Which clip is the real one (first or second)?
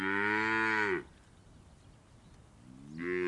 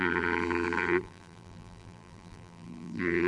first